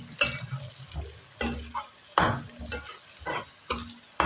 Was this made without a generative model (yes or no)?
yes